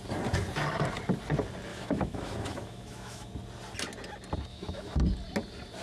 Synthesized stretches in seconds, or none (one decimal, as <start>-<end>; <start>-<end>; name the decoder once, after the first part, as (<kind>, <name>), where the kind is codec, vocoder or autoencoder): 1.7-3.3 (autoencoder, DAC-VAE); 4.5-5.0